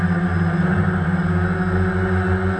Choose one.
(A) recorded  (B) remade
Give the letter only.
A